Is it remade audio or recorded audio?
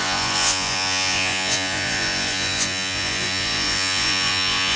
remade